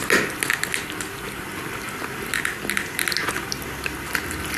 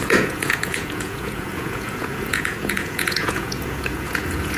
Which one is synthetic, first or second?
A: second